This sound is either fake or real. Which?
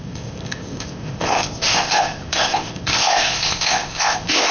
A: fake